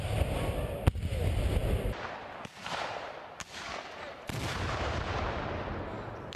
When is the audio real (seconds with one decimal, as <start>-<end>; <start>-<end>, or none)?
0.0-6.4